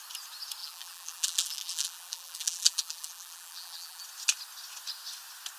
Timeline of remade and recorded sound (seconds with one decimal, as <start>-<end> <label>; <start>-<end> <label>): 0.0-0.6 recorded; 0.6-4.0 remade; 4.0-5.6 recorded